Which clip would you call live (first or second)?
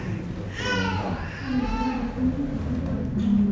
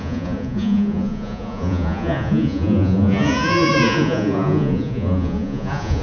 first